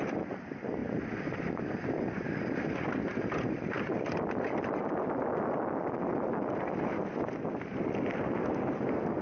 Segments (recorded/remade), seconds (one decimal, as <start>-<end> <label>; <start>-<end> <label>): 0.0-0.8 recorded; 0.8-2.1 remade; 2.1-3.1 recorded; 3.1-7.1 remade; 7.1-9.2 recorded